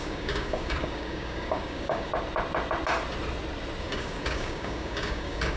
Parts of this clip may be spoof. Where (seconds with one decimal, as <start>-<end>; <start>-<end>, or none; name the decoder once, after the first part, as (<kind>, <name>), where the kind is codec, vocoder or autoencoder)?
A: 0.0-2.1 (codec, DAC); 3.8-5.6